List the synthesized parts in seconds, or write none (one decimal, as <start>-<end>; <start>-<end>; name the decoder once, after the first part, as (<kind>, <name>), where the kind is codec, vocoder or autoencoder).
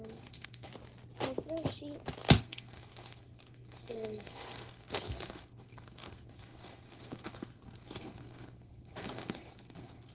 0.0-0.7 (codec, SNAC); 2.4-10.1